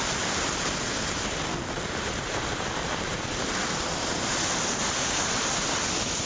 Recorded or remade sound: recorded